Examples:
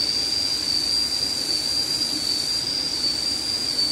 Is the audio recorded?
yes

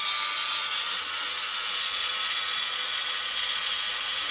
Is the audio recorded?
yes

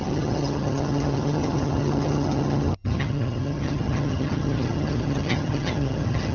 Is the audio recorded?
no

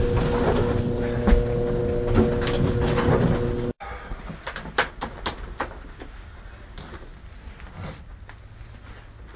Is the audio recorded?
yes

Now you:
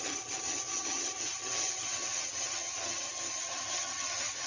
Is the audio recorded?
no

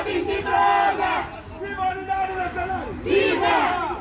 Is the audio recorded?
yes